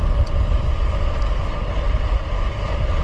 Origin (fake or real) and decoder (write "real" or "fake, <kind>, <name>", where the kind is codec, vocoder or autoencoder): real